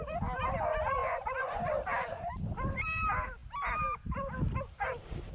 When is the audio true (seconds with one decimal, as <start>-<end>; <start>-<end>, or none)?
0.0-1.0; 1.7-5.3